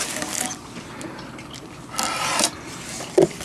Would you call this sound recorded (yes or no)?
yes